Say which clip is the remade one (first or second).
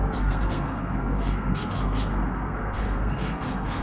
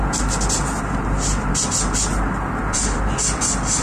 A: first